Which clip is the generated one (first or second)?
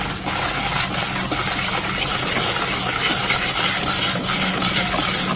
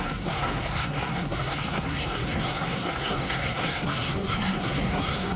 second